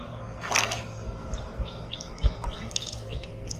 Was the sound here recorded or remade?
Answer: remade